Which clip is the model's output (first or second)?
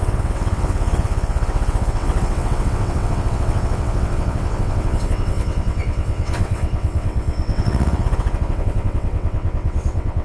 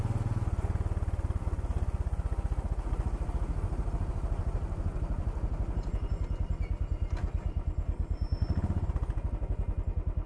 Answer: first